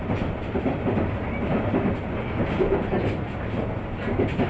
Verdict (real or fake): real